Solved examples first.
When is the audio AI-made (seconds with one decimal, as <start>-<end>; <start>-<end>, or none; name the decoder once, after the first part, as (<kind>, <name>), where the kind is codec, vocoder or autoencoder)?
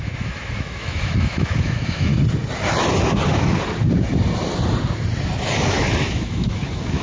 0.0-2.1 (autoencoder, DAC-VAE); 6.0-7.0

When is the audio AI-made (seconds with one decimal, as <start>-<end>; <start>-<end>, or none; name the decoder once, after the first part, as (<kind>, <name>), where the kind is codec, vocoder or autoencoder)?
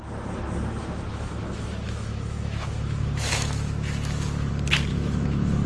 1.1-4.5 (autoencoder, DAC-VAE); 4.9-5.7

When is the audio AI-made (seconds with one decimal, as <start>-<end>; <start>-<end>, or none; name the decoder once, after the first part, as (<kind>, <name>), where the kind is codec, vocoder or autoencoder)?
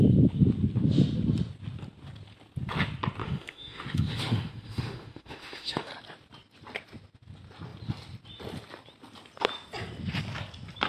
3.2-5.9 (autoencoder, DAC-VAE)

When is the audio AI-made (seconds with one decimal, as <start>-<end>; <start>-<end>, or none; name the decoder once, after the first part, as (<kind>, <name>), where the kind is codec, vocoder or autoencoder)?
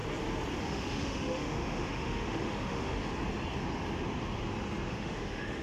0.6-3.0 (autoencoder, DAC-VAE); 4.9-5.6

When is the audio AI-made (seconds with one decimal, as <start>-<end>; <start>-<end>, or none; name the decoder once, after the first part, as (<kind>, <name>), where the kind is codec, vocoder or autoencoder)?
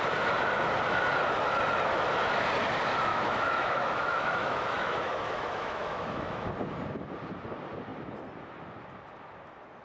3.1-6.5 (autoencoder, DAC-VAE)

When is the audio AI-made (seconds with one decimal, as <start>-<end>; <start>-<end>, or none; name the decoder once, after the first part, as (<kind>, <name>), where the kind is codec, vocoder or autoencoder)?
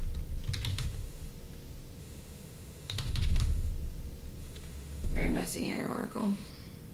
0.7-1.3 (autoencoder, DAC-VAE); 2.0-3.7; 4.4-6.5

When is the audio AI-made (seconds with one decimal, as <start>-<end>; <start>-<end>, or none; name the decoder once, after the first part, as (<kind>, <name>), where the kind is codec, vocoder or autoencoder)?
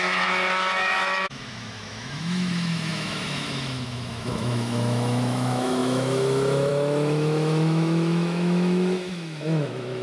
0.0-10.0 (autoencoder, DAC-VAE)